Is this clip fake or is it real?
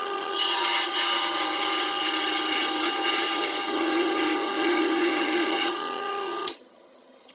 fake